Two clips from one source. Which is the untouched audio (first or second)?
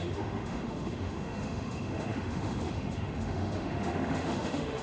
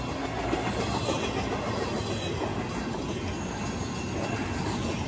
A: second